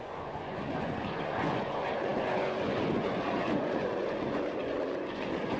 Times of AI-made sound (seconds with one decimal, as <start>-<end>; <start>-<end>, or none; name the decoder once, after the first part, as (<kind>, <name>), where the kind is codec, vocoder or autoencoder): 0.0-5.6 (vocoder, Vocos)